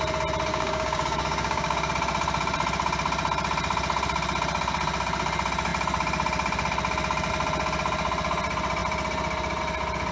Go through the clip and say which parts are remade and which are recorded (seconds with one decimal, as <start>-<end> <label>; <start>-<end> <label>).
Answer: 0.0-0.5 recorded; 0.5-1.9 remade; 1.9-10.1 recorded